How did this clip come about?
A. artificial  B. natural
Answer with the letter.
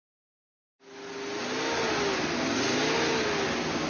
B